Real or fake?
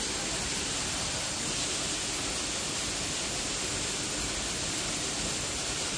real